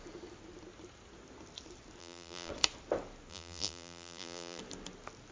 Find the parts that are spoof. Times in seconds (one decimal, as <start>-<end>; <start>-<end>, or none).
2.0-2.5; 3.3-4.6